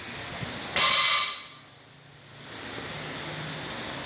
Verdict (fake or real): real